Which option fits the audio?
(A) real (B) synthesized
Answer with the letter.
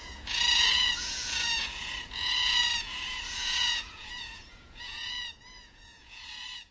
B